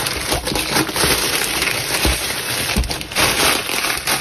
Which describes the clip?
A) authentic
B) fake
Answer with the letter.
B